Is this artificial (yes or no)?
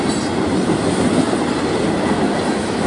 no